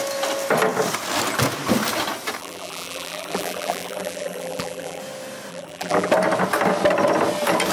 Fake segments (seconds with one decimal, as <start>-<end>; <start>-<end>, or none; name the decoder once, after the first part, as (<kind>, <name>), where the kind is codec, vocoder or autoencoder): 2.4-5.0 (vocoder, BigVGAN v2); 5.5-6.1